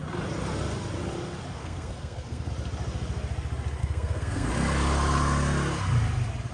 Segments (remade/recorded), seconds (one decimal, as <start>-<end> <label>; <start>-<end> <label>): 0.0-1.6 recorded; 1.6-2.5 remade; 2.5-3.8 recorded; 3.8-4.5 remade; 4.5-6.5 recorded